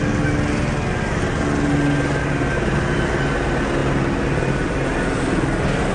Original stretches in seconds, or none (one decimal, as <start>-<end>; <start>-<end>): 0.0-5.9